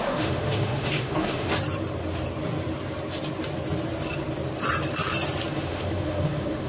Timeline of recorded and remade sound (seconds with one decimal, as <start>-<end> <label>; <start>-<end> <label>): 0.0-1.5 remade; 1.5-5.5 recorded; 5.5-6.7 remade